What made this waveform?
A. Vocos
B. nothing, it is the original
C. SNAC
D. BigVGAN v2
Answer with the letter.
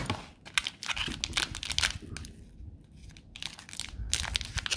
B